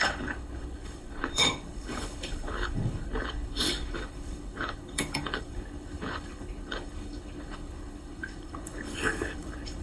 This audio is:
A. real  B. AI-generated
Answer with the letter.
B